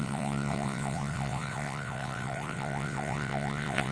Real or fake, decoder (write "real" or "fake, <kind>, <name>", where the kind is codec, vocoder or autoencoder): fake, vocoder, WaveNeXt